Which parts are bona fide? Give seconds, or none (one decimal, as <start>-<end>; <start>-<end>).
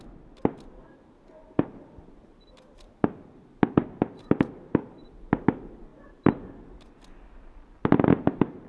0.0-8.7